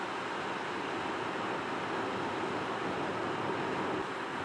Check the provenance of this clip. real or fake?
real